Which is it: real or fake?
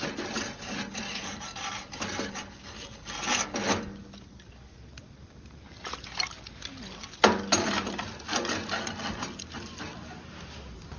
real